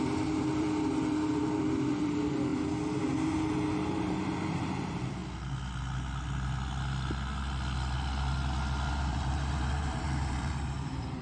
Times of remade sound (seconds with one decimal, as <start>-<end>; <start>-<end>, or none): 0.0-2.5; 3.0-5.2; 8.9-11.2